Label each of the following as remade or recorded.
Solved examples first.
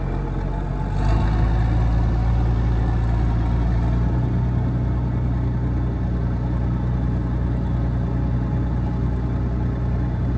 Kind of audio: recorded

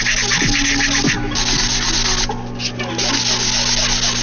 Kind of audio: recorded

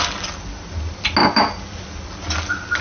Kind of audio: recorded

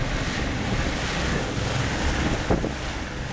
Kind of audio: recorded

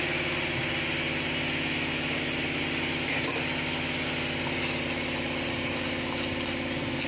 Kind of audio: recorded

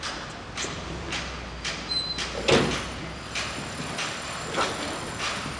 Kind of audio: recorded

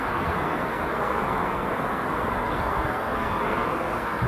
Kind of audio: remade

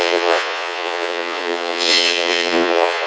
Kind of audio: remade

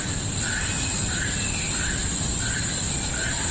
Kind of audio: recorded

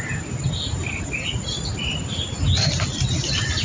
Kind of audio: recorded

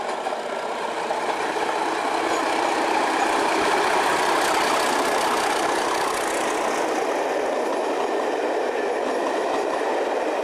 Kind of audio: recorded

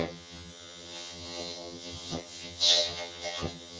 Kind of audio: remade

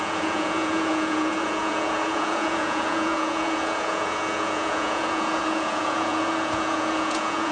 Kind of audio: remade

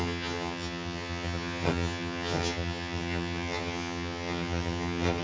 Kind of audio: remade